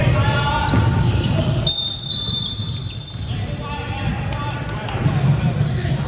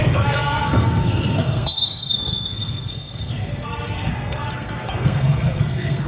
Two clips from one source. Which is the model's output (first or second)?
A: second